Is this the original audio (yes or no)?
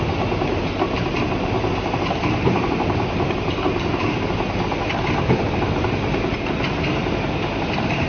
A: yes